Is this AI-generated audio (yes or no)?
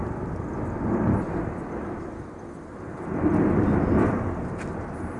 no